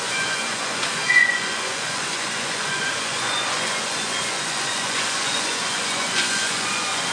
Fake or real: fake